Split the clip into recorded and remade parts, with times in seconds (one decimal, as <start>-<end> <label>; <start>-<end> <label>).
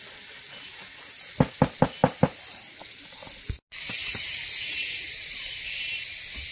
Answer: 0.0-4.0 recorded; 4.0-6.0 remade; 6.0-6.5 recorded